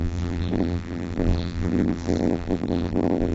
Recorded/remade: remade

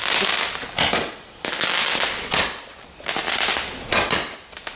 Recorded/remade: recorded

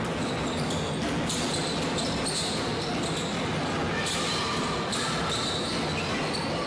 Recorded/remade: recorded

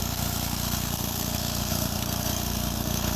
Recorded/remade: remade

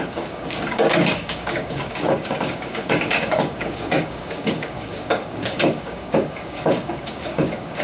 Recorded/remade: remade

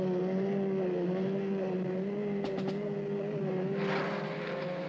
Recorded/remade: recorded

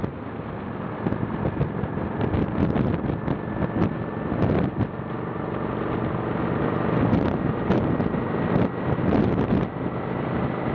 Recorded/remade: recorded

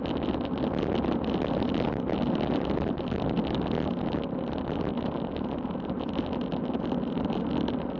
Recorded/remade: recorded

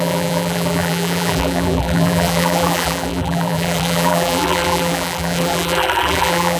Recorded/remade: remade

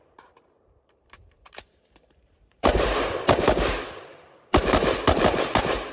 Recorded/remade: remade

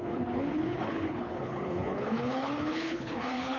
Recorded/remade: remade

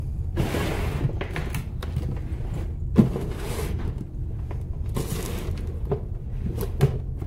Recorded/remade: recorded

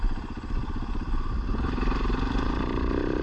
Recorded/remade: recorded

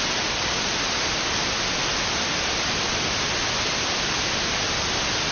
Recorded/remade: recorded